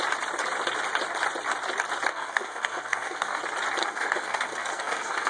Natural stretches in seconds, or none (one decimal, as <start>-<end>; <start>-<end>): 0.0-2.1; 3.4-3.8